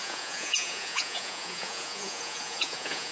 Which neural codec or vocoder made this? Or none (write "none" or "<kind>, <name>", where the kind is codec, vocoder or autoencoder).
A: vocoder, Vocos